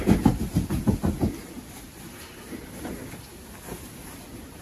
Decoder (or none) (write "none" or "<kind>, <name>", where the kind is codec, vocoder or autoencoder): none